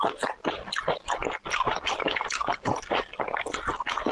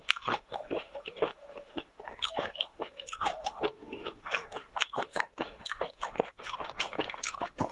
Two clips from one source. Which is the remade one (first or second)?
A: second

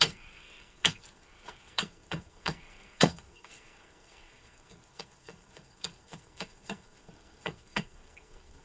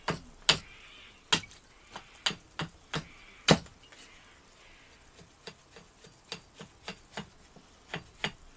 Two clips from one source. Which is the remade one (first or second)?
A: first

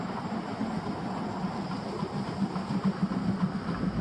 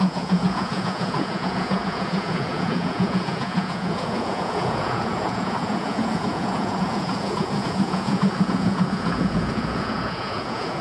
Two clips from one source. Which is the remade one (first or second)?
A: second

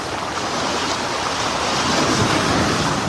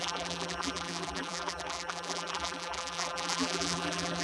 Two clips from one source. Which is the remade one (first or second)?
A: second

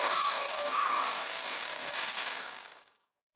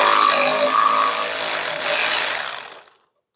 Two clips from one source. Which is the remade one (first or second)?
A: first